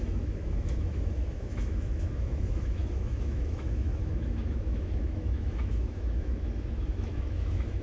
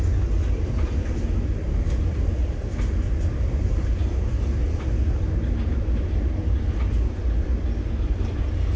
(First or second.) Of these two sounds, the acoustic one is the second